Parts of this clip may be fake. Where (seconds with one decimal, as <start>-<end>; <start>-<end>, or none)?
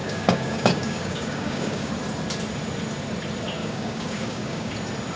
0.0-1.9; 3.6-4.7